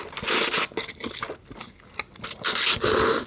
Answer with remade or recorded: recorded